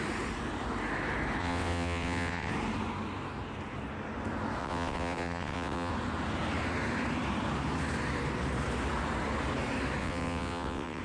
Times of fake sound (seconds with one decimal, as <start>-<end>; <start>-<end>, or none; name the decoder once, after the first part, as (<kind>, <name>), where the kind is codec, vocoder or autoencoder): 1.4-2.5 (vocoder, WaveNeXt); 4.6-5.9; 10.0-11.0